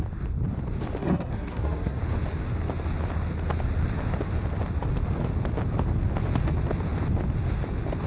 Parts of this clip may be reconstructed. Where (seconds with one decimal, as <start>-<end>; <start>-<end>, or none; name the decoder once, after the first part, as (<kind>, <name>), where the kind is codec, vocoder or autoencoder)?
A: 1.0-2.0 (codec, SNAC)